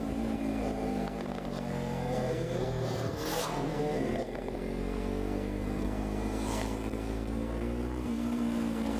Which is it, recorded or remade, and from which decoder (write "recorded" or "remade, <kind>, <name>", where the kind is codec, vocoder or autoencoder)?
remade, codec, SNAC